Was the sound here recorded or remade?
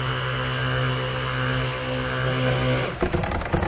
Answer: recorded